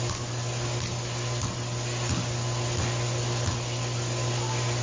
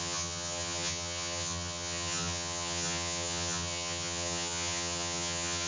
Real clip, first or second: first